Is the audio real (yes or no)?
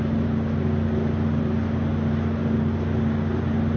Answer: yes